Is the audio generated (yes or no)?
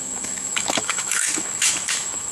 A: yes